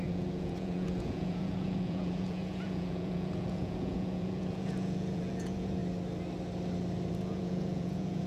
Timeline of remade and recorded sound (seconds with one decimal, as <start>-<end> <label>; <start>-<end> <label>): 0.0-5.8 remade; 5.8-7.1 recorded; 7.1-8.3 remade